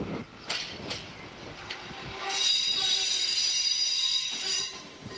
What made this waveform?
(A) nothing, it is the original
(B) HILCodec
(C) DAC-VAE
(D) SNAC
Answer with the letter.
A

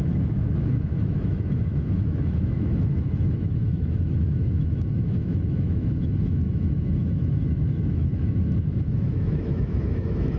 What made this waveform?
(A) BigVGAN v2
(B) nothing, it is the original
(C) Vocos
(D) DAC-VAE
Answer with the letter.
D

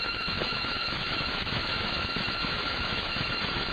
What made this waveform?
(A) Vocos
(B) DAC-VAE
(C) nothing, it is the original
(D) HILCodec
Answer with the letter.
B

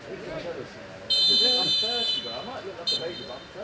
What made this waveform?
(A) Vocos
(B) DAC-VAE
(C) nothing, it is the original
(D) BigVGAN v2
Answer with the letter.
C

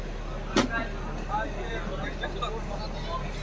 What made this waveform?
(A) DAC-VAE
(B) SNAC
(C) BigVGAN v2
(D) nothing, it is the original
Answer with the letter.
D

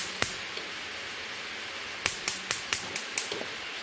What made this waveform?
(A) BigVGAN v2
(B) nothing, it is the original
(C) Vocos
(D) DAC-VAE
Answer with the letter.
B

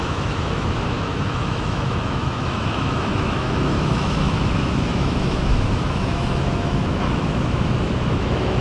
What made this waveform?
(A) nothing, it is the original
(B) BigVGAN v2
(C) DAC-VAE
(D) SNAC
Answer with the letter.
C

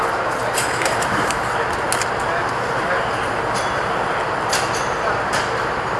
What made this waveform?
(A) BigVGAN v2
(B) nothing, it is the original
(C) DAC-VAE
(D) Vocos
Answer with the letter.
B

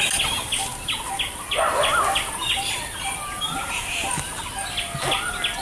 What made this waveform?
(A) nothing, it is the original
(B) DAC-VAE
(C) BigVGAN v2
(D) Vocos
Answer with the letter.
A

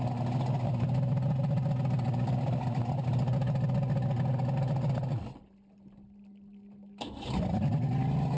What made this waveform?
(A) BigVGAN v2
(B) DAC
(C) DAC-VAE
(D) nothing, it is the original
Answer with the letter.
D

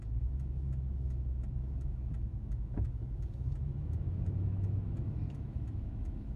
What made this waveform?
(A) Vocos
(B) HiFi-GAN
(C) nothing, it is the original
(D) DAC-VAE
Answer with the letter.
D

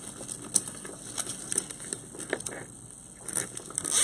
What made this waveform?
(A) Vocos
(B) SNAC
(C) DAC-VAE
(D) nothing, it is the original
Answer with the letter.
D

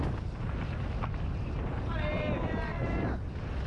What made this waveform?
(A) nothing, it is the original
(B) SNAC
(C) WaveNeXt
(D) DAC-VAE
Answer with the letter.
A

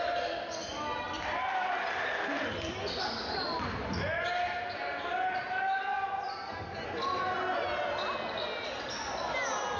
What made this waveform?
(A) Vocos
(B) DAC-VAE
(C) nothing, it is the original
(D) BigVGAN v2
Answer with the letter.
C